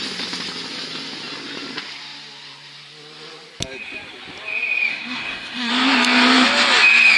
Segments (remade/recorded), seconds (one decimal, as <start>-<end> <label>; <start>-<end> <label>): 0.0-4.9 recorded; 4.9-5.7 remade; 5.7-7.2 recorded